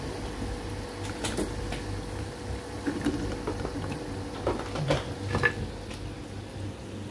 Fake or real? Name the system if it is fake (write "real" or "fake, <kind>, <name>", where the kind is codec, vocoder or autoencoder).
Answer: real